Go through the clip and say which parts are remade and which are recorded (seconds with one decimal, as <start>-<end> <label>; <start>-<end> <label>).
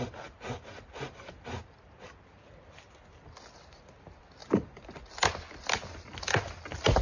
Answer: 0.0-7.0 recorded